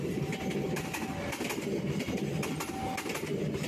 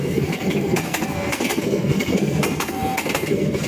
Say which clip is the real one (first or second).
first